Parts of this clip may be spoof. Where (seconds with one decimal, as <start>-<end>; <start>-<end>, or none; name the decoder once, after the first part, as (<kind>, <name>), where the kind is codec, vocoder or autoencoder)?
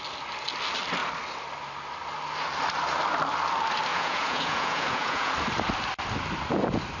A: 3.9-5.3 (vocoder, Vocos)